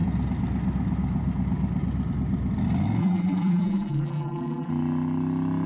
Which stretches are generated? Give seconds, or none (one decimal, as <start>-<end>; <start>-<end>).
3.0-4.7